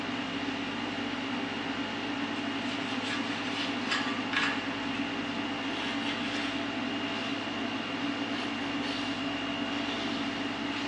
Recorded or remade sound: recorded